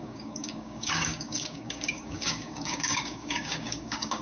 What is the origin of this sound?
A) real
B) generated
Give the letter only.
B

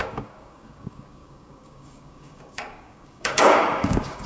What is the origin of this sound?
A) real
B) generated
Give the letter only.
B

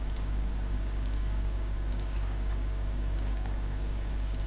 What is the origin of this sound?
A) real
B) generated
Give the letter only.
B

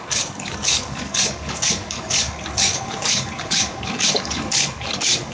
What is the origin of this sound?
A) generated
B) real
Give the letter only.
A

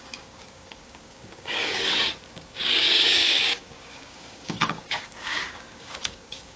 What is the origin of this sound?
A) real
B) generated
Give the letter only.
B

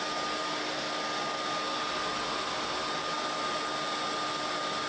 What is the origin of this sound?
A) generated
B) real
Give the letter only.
B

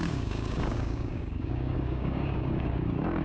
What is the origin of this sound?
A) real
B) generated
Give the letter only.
B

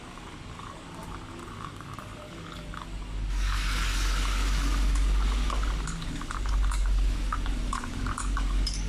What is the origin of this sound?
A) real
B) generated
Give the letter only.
B